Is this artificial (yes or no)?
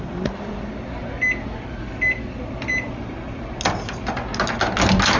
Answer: no